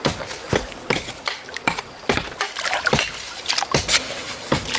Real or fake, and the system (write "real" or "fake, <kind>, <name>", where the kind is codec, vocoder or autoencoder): real